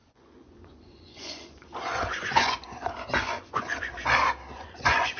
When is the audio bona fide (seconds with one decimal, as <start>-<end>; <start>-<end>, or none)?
3.9-4.5